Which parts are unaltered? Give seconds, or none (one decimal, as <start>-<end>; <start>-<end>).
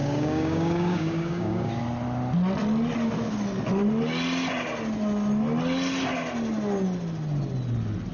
1.7-8.1